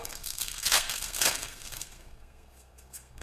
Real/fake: fake